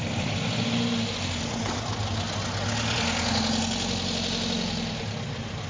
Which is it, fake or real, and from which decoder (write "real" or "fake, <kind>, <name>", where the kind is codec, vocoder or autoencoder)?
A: real